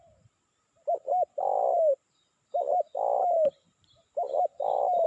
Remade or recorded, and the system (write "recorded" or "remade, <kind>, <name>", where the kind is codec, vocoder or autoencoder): recorded